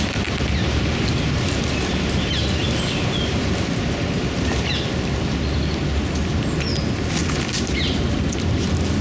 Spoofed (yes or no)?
no